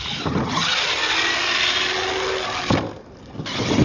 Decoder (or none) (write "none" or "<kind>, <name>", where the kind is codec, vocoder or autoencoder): none